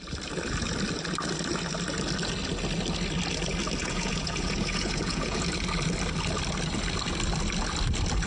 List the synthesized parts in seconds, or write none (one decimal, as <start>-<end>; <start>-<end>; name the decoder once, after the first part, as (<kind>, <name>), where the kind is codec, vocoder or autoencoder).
3.8-5.5 (vocoder, Vocos)